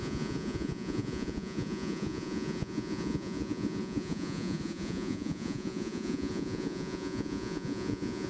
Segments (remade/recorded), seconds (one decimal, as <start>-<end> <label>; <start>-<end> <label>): 0.0-8.3 remade